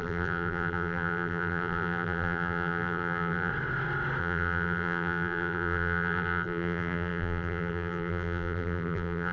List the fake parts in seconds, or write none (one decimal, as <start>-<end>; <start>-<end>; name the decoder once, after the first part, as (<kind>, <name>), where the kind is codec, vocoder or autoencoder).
0.0-3.5 (vocoder, BigVGAN v2); 4.2-9.3